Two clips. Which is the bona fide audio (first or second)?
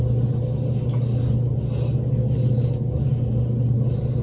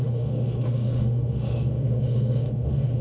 first